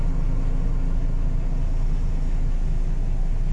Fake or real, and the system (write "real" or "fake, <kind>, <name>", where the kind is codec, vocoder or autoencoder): real